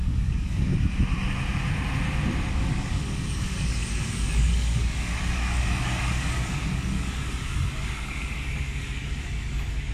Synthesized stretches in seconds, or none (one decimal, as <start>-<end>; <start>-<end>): 0.0-0.7; 2.5-9.9